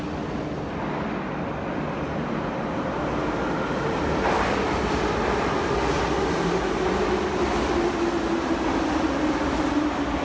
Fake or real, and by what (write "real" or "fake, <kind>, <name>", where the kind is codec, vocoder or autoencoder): real